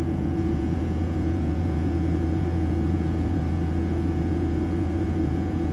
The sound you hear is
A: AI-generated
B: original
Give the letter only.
A